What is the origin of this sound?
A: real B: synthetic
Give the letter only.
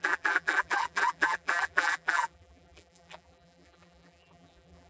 B